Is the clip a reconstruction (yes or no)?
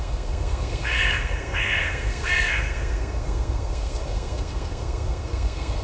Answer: yes